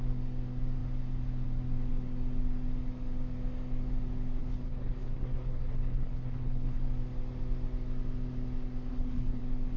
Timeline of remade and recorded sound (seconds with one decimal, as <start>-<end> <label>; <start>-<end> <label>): 0.0-4.4 recorded; 4.4-6.8 remade; 6.8-8.9 recorded; 8.9-9.4 remade; 9.4-9.8 recorded